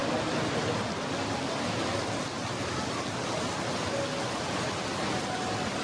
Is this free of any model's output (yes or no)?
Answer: yes